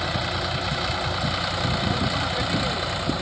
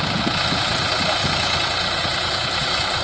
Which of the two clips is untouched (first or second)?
first